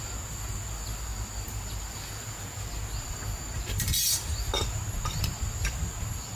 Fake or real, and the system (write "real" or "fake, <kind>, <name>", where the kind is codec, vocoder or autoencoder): real